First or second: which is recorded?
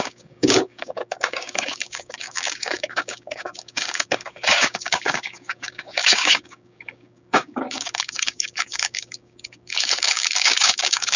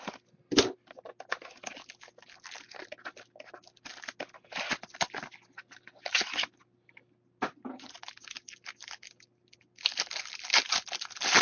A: second